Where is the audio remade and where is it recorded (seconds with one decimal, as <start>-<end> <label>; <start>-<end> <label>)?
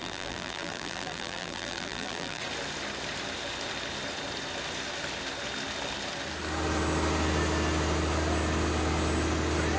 0.0-2.4 remade; 2.4-9.8 recorded